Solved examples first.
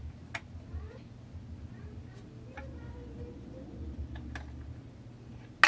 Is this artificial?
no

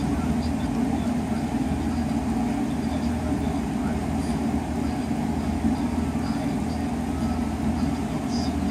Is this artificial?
no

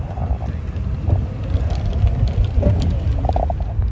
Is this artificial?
no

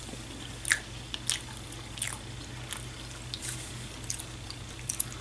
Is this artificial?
no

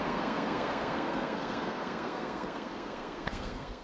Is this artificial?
yes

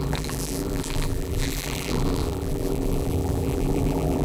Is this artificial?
yes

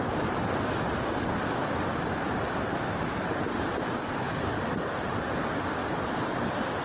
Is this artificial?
no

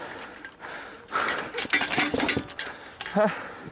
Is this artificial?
no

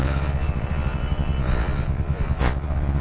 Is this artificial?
yes